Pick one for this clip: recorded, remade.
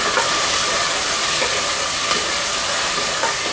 recorded